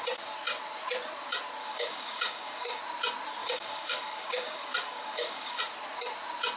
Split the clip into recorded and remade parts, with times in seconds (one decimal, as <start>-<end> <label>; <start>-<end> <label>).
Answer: 0.0-1.6 recorded; 1.6-2.8 remade; 2.8-3.4 recorded; 3.4-5.6 remade; 5.6-6.6 recorded